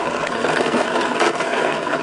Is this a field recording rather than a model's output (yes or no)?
no